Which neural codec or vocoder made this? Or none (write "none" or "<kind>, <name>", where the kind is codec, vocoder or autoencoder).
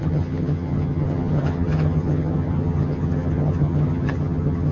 vocoder, HiFi-GAN